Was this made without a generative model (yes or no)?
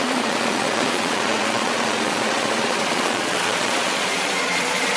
no